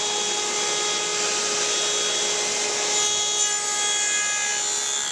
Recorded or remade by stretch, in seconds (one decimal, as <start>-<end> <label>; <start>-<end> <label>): 0.0-5.1 recorded

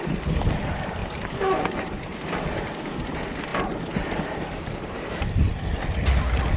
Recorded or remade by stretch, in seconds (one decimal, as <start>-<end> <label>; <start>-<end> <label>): 0.0-1.0 recorded; 1.0-2.9 remade; 2.9-3.5 recorded; 3.5-5.5 remade; 5.5-6.6 recorded